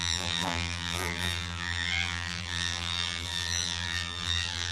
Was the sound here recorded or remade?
remade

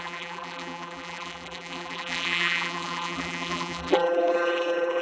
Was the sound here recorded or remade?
remade